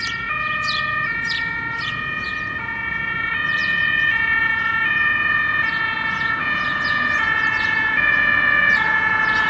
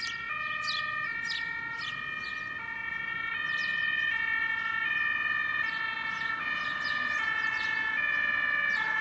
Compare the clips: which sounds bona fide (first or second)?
second